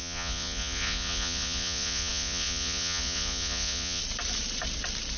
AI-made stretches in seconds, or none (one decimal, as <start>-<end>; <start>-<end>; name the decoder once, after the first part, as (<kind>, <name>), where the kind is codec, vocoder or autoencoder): 0.0-4.0 (vocoder, Vocos)